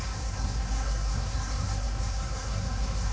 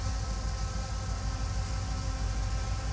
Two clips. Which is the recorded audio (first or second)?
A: second